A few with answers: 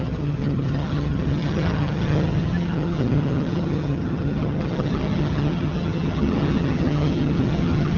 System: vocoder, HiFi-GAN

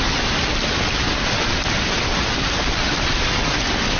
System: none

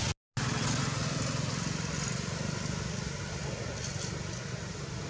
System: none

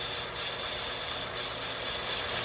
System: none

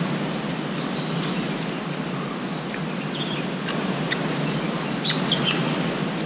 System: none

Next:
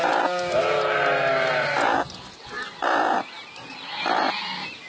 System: none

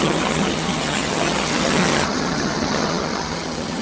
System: vocoder, HiFi-GAN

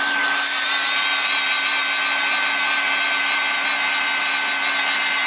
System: none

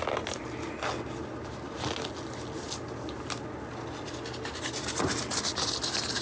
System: none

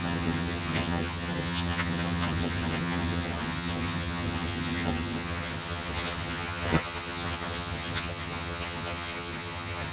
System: vocoder, HiFi-GAN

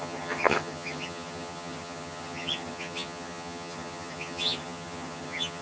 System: vocoder, HiFi-GAN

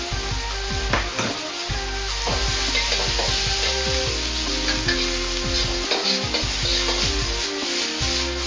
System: none